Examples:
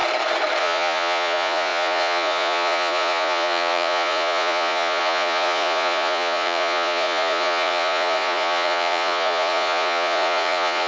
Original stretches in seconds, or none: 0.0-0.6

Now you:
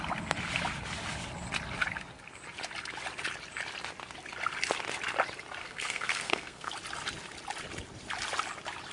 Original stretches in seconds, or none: 0.0-5.6; 6.7-8.9

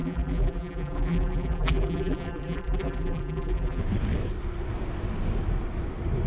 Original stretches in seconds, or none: 3.8-6.3